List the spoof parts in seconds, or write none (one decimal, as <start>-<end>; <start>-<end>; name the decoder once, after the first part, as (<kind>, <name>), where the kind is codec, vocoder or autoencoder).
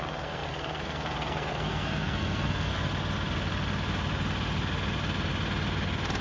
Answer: 0.0-2.7 (codec, SNAC)